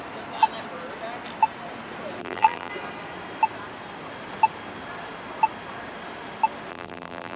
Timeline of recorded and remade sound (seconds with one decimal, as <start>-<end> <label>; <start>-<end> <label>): 0.0-2.2 recorded; 2.2-2.7 remade; 2.7-6.7 recorded; 6.7-7.4 remade